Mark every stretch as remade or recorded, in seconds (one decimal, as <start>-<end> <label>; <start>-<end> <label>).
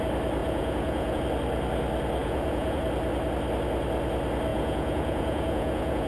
0.0-0.4 recorded; 0.4-1.2 remade; 1.2-2.2 recorded; 2.2-2.8 remade; 2.8-4.5 recorded; 4.5-6.1 remade